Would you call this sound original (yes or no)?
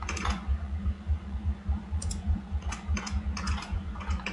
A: no